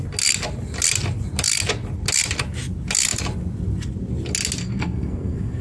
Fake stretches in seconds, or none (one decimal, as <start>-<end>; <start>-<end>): 4.6-5.6

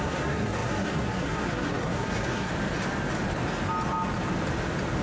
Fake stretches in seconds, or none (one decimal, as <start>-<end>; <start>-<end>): 0.0-2.5

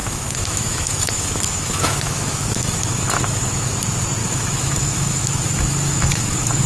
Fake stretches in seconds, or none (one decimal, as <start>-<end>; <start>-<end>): 0.0-3.7; 4.2-6.7

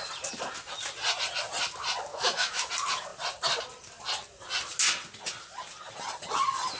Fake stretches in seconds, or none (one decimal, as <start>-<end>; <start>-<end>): 2.1-2.7

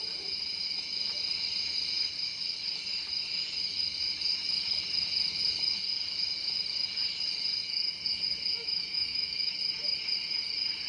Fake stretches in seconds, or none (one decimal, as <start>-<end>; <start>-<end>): 8.6-9.5